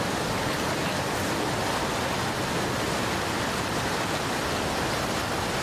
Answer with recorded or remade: recorded